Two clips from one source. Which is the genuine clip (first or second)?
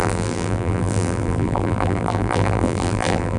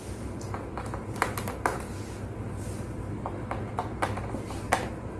second